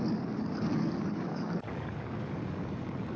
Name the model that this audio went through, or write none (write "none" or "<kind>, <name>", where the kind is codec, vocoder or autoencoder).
codec, DAC